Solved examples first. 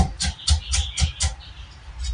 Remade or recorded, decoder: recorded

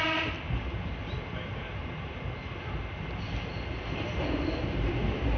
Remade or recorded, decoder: recorded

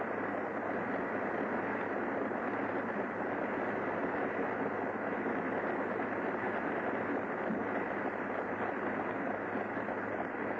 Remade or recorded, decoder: recorded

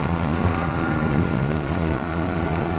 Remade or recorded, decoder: remade, vocoder, Vocos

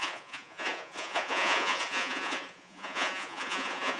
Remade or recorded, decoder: remade, vocoder, Vocos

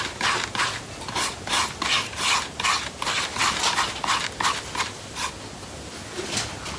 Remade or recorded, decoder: recorded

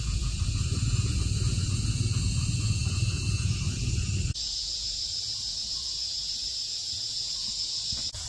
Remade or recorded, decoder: remade, vocoder, Vocos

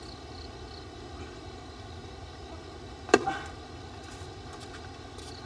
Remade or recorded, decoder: recorded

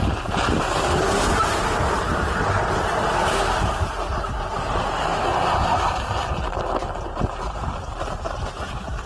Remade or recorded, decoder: recorded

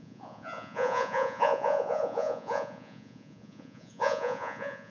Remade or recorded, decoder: remade, vocoder, Vocos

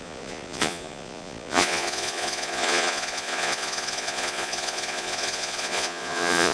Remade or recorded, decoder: remade, vocoder, Vocos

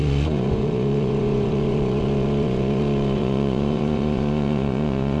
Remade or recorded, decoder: remade, vocoder, Vocos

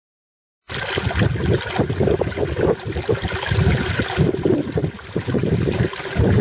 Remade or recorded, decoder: recorded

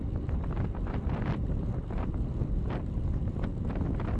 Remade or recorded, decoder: recorded